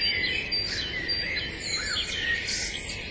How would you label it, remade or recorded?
recorded